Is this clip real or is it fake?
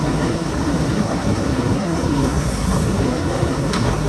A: fake